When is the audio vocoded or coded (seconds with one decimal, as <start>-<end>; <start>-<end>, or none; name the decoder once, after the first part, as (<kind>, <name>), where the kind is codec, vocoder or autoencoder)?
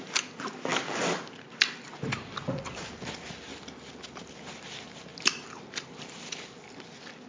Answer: none